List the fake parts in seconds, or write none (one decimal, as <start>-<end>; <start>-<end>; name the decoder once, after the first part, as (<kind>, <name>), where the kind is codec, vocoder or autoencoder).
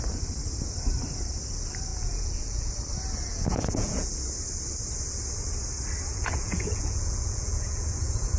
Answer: 1.9-2.7 (vocoder, Vocos); 3.3-4.1; 6.1-8.4